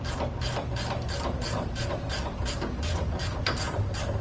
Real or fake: fake